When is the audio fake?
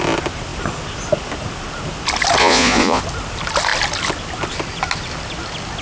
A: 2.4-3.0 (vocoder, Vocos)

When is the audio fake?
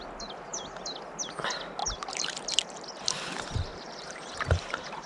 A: 1.8-2.4 (vocoder, BigVGAN v2); 3.7-5.1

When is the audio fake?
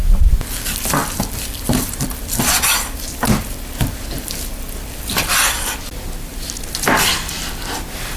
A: 1.0-5.3 (vocoder, BigVGAN v2)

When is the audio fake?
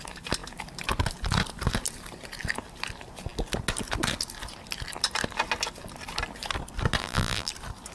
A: 7.0-7.5 (vocoder, BigVGAN v2)